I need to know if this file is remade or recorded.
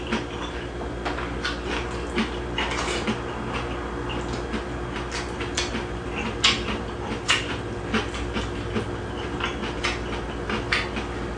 recorded